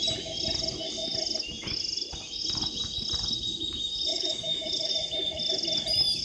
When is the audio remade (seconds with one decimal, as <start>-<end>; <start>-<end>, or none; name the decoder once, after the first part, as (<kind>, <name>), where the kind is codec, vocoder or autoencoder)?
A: 4.1-4.9 (autoencoder, DAC-VAE)

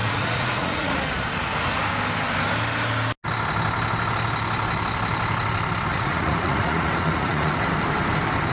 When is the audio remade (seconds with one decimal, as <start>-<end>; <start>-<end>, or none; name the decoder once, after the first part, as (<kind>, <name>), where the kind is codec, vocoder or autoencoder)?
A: 0.0-1.0 (vocoder, Vocos); 5.9-7.6

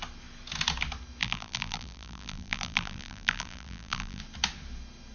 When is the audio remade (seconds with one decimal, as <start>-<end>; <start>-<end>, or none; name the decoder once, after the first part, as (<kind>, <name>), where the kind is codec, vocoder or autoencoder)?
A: 1.2-4.2 (vocoder, BigVGAN v2)

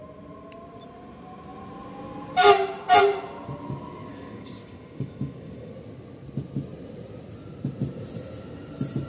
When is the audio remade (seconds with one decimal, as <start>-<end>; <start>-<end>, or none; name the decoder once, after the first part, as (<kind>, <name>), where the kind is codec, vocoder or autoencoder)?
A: 4.1-5.7 (codec, DAC)